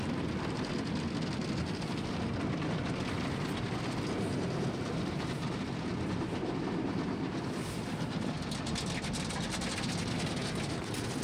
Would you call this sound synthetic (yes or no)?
no